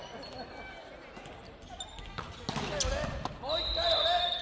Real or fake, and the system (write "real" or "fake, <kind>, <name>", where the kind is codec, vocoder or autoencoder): real